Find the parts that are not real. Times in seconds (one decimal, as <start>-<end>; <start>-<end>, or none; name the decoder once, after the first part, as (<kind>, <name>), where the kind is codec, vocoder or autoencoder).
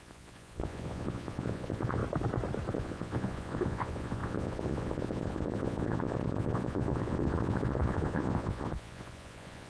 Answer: 0.0-2.0 (vocoder, Vocos); 2.7-9.7